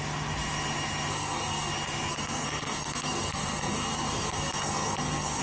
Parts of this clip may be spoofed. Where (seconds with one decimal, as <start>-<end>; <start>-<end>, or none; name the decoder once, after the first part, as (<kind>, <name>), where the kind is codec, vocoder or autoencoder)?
1.1-1.7 (codec, SNAC); 2.1-5.4